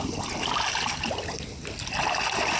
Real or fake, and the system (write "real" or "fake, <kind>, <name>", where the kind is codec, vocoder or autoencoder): real